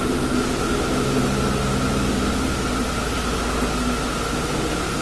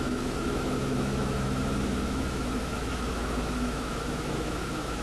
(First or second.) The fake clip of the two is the second